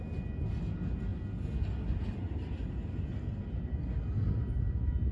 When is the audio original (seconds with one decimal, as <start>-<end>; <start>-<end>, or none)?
0.0-5.1